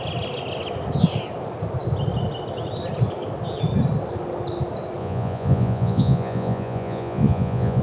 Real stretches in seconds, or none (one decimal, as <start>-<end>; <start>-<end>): 0.0-5.0

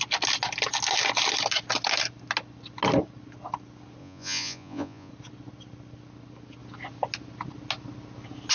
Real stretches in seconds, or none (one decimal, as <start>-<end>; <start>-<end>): 0.0-4.0; 5.1-8.5

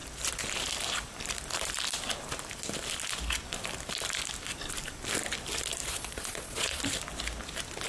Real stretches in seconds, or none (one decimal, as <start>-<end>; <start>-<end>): 0.0-5.9; 6.8-7.9

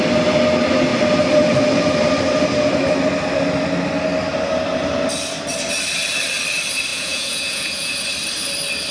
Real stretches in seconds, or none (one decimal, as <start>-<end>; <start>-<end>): 0.0-6.9; 8.0-8.9

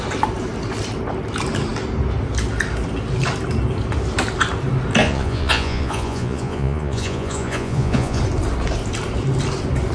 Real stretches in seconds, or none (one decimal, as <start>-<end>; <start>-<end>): 0.0-5.0; 8.2-9.9

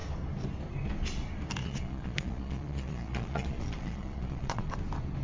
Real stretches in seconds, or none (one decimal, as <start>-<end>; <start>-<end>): 0.0-1.6; 4.7-5.2

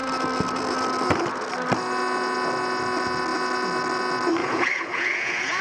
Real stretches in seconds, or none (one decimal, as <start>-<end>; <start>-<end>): 0.0-4.4

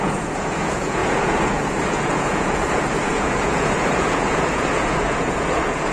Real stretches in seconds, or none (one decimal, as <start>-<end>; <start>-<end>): none